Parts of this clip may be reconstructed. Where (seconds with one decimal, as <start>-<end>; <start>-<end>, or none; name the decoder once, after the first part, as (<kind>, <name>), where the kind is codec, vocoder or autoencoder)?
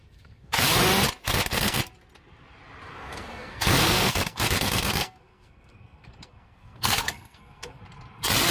0.0-0.6 (codec, SNAC); 1.2-1.8; 2.9-7.8